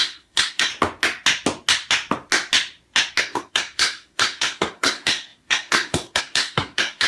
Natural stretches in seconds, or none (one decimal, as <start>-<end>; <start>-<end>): 0.7-3.2